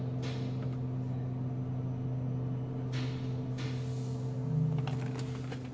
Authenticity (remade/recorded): recorded